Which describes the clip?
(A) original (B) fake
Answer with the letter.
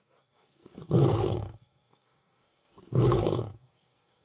B